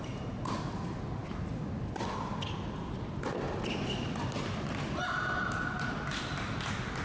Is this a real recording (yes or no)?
yes